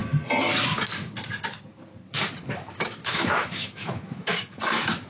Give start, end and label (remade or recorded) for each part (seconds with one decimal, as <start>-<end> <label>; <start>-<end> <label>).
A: 0.0-2.7 recorded; 2.7-5.1 remade

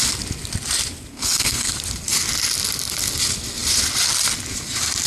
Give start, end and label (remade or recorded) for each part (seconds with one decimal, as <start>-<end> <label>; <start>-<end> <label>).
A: 0.0-1.1 recorded; 1.1-1.7 remade; 1.7-5.1 recorded